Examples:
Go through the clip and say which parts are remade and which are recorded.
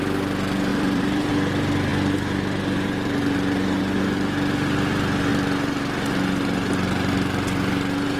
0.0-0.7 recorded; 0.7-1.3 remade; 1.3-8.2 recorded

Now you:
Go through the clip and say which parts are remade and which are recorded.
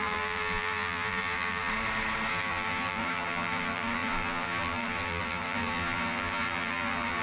0.0-1.7 remade; 1.7-2.3 recorded; 2.3-7.2 remade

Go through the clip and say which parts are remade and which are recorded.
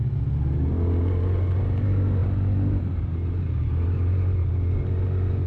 0.0-5.5 recorded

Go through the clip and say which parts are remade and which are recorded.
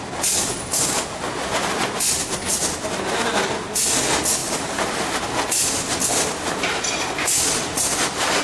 0.0-4.4 recorded; 4.4-5.2 remade; 5.2-8.4 recorded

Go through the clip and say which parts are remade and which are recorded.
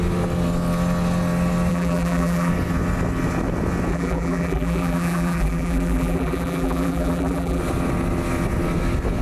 0.0-1.7 recorded; 1.7-2.5 remade; 2.5-3.9 recorded; 3.9-7.6 remade; 7.6-9.2 recorded